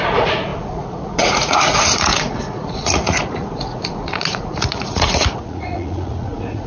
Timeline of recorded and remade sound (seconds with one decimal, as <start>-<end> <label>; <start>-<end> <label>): 0.0-6.7 remade